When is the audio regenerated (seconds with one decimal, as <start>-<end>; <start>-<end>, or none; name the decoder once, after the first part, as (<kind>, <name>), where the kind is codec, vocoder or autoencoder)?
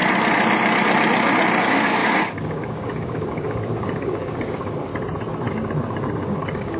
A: 1.6-4.9 (codec, DAC); 5.5-6.8